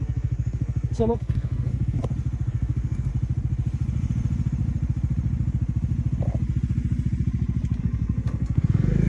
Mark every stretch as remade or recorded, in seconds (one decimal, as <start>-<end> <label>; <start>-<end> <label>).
0.0-2.0 remade; 2.0-2.5 recorded; 2.5-3.1 remade; 3.1-7.8 recorded; 7.8-9.1 remade